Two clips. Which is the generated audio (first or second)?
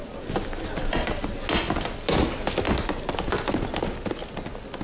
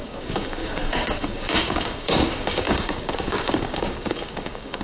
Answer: second